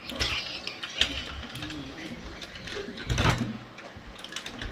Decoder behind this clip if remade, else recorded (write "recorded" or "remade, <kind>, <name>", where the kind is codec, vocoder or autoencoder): recorded